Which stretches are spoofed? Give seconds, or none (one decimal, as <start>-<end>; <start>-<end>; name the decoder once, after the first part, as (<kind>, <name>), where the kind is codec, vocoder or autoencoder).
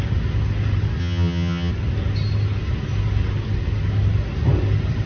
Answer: 1.0-1.7 (vocoder, HiFi-GAN)